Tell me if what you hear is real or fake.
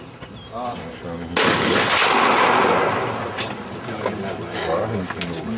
real